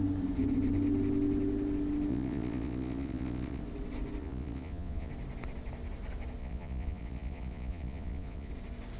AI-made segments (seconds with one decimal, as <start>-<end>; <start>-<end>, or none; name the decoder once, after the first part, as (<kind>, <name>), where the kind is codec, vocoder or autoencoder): 2.1-3.6 (vocoder, Vocos); 4.2-5.1; 6.4-8.5